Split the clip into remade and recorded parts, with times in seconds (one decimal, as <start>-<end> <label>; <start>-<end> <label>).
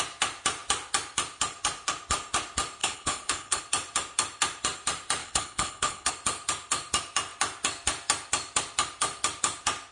0.0-2.8 recorded; 2.8-3.6 remade; 3.6-5.2 recorded; 5.2-6.1 remade; 6.1-9.9 recorded